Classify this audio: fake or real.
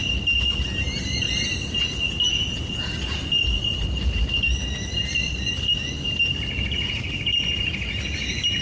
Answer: real